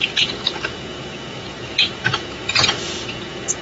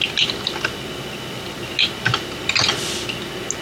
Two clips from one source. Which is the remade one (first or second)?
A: first